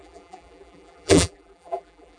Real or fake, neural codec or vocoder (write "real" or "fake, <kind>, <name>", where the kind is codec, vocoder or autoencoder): fake, vocoder, BigVGAN v2